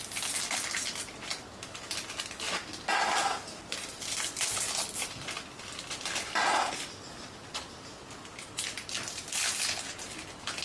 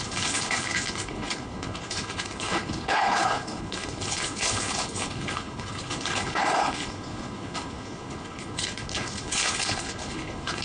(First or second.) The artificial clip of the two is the second